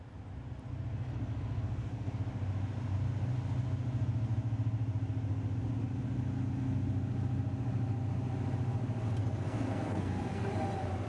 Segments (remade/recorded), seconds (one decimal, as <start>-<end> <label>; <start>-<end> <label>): 0.0-0.9 recorded; 0.9-2.2 remade; 2.2-9.2 recorded; 9.2-10.5 remade; 10.5-11.1 recorded

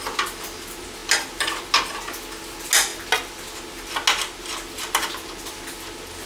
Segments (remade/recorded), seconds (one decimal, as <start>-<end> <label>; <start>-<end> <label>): 0.0-6.3 recorded

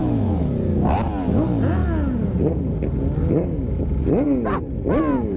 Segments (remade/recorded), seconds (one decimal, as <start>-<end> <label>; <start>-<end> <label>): 0.0-0.8 remade; 0.8-5.4 recorded

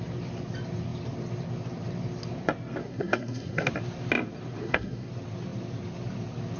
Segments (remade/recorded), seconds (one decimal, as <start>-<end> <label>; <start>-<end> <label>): 0.0-2.8 recorded; 2.8-3.7 remade; 3.7-4.6 recorded; 4.6-5.1 remade; 5.1-6.6 recorded

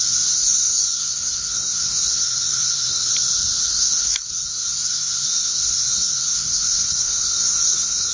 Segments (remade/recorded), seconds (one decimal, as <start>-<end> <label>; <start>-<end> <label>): 0.0-3.1 remade; 3.1-3.6 recorded; 3.6-8.1 remade